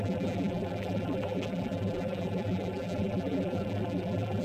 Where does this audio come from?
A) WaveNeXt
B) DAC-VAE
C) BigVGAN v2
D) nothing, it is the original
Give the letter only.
C